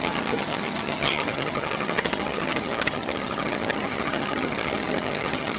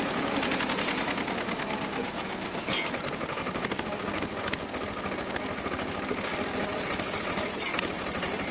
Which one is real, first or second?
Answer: second